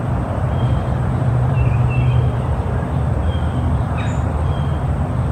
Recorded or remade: remade